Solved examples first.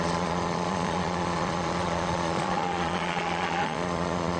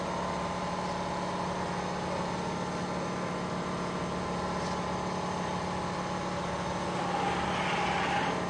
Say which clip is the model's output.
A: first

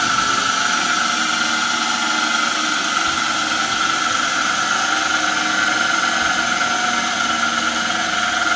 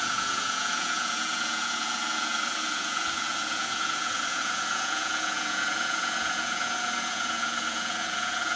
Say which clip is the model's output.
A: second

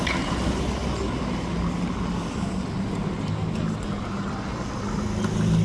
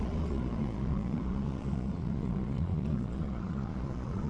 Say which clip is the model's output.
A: second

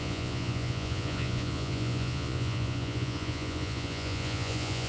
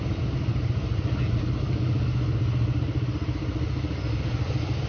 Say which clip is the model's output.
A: first